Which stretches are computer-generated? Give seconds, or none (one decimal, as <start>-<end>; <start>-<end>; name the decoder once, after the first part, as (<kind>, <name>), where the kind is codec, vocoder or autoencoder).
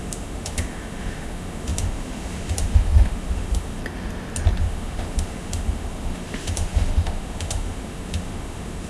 0.0-3.8 (autoencoder, DAC-VAE); 4.6-8.9